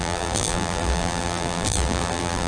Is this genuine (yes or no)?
no